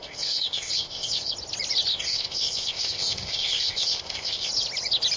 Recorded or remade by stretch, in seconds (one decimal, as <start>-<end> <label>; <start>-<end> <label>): 0.0-1.3 remade; 1.3-1.9 recorded; 1.9-4.5 remade; 4.5-5.2 recorded